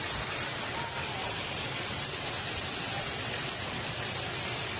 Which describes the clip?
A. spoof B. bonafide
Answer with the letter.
B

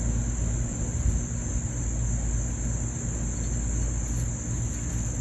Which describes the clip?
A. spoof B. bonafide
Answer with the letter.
B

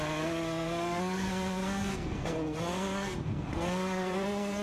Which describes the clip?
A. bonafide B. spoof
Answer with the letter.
B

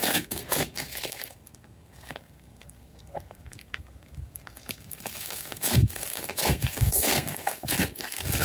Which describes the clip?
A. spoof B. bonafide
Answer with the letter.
A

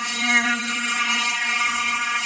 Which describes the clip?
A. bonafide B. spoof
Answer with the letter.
B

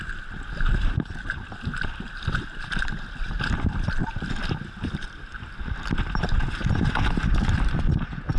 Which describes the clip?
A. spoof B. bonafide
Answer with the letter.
B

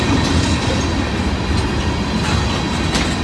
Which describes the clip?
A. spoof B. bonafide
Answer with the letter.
B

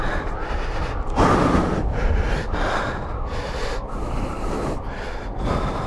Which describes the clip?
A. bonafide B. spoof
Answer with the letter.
A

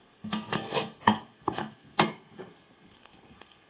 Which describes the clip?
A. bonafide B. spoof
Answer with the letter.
B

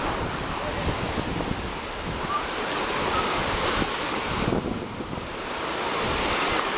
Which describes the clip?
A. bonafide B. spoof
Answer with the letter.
A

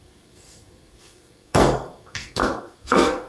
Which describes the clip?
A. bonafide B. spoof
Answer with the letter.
B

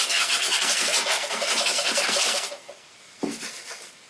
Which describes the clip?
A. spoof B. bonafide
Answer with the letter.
A